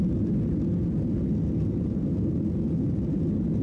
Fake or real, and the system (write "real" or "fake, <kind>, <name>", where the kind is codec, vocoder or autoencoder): real